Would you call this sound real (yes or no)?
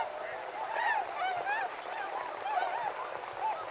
yes